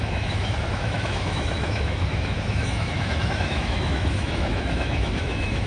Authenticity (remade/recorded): remade